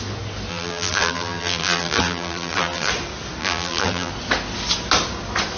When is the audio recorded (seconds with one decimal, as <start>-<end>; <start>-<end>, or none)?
0.0-0.5; 2.9-3.4; 4.1-5.6